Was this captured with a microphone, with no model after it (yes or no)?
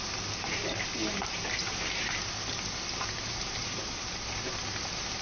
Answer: yes